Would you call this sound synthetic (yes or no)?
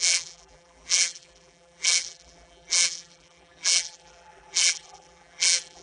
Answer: yes